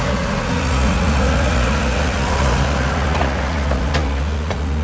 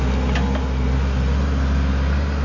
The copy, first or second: first